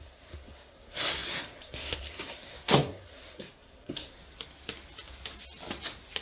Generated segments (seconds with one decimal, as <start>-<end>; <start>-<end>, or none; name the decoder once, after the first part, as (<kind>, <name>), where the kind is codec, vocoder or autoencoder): 0.0-4.2 (codec, SNAC)